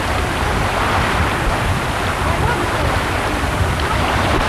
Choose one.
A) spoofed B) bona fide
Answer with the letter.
B